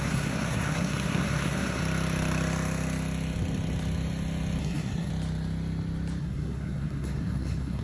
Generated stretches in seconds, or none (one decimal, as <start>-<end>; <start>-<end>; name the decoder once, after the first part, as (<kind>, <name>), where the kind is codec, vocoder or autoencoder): 0.0-1.8 (codec, SNAC); 4.6-5.1; 6.2-7.8